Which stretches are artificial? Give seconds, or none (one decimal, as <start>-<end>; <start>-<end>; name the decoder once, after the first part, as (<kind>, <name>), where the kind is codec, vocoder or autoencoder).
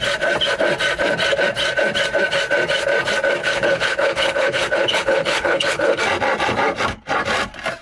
3.4-6.0 (codec, HILCodec)